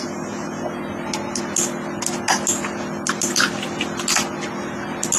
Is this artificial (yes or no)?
no